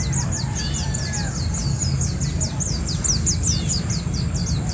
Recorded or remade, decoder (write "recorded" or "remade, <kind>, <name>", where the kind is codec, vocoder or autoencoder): recorded